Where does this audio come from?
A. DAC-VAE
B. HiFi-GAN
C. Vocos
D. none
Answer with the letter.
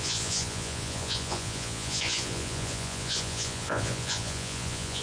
C